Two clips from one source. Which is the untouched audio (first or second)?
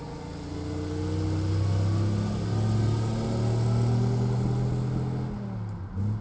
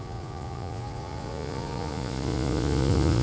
first